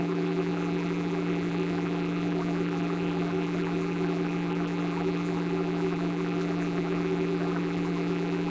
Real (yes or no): no